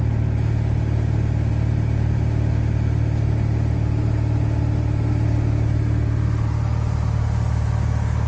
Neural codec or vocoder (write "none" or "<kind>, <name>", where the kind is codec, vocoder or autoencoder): none